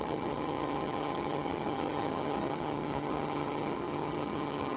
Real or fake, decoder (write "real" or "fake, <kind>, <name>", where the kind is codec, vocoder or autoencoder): fake, vocoder, HiFi-GAN